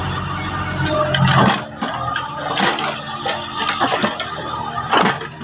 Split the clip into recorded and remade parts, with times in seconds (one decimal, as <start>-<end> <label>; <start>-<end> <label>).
0.0-5.4 recorded